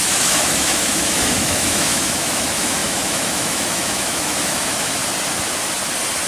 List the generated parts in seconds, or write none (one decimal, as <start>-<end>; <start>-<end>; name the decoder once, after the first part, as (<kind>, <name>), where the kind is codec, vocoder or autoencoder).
0.0-5.0 (autoencoder, DAC-VAE)